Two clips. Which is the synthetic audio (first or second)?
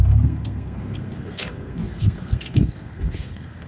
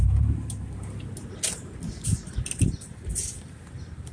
first